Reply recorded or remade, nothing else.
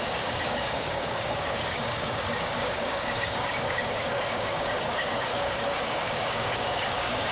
remade